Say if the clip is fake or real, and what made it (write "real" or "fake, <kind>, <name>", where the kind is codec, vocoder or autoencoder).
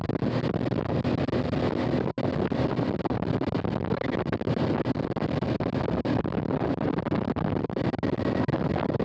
real